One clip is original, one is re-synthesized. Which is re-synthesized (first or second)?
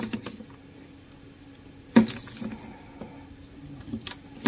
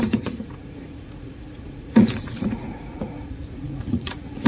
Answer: second